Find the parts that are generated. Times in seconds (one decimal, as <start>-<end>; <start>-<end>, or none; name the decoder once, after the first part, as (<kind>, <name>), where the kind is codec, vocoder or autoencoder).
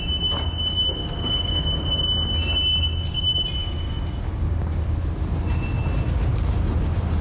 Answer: 1.0-1.6 (codec, DAC); 3.6-4.8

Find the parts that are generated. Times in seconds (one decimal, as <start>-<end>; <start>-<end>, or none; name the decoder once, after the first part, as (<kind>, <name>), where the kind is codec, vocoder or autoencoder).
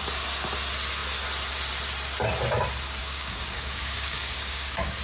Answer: 3.0-5.0 (codec, DAC)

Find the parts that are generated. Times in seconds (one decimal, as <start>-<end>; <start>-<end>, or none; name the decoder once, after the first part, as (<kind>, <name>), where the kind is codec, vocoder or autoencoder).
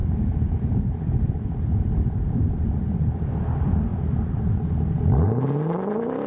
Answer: none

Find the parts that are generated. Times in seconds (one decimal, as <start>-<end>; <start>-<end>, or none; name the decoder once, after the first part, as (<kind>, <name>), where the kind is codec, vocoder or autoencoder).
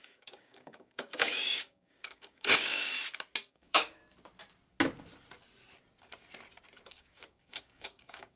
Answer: 0.0-2.9 (codec, DAC); 3.5-4.0; 6.9-8.4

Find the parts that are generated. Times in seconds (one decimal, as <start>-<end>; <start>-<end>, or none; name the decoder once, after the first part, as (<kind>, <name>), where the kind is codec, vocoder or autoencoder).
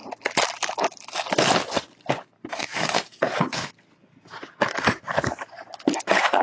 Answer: 2.5-3.7 (codec, DAC)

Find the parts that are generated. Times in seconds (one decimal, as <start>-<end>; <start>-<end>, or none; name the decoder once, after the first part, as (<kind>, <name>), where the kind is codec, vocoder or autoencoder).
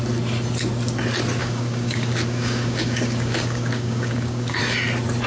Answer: 1.4-4.6 (codec, DAC)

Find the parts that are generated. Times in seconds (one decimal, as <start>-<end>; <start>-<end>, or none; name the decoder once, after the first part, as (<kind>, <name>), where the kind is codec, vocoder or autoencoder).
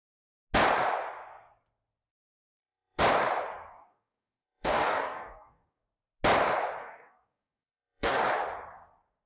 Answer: 2.1-3.0 (codec, DAC); 3.8-5.8; 6.8-8.2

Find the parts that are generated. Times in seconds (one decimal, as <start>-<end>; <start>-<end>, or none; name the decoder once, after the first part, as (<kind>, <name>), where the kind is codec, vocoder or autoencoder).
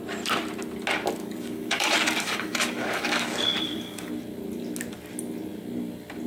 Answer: 1.2-4.1 (codec, DAC)